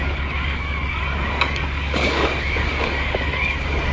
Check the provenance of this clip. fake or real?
fake